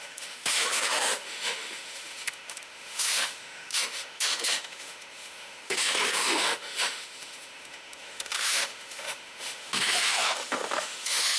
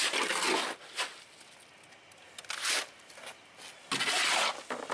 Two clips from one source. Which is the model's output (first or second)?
first